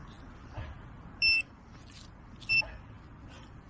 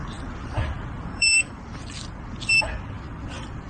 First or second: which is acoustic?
first